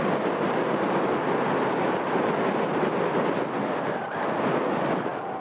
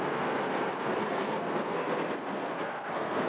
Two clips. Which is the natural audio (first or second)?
first